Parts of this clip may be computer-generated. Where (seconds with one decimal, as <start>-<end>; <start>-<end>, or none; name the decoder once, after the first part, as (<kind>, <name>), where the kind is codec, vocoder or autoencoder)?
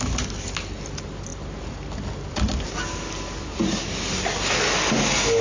none